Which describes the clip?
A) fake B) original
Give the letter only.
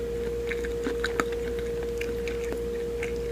B